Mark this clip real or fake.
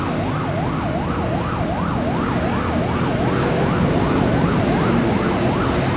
real